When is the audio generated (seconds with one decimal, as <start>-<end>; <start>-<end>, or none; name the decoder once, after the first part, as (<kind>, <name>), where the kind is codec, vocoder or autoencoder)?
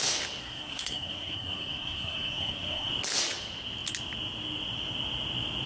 0.4-2.9 (codec, SNAC)